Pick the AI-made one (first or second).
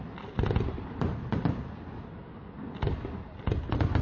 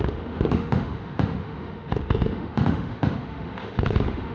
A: second